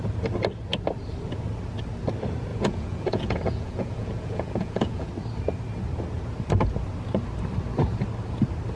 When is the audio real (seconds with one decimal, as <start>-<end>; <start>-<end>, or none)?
0.0-2.5; 5.1-8.8